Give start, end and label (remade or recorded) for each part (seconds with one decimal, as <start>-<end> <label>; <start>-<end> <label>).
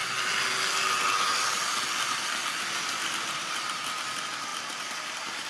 0.0-5.5 recorded